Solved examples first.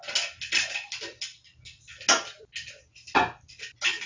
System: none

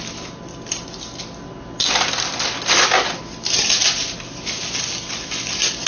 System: none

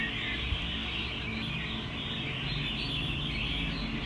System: none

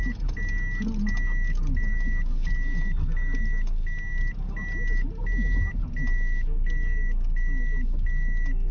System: none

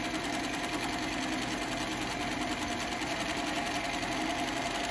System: none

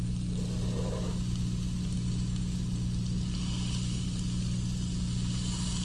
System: none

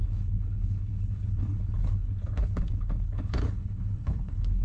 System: codec, HILCodec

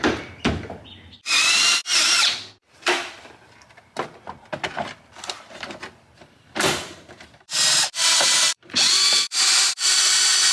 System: vocoder, BigVGAN v2